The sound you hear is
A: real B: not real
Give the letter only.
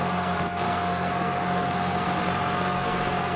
B